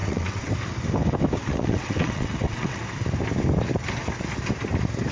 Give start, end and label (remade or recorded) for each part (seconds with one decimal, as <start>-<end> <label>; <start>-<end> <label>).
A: 0.0-0.5 remade; 0.5-1.4 recorded; 1.4-2.8 remade; 2.8-5.1 recorded